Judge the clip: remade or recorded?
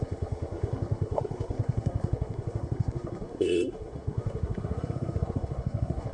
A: remade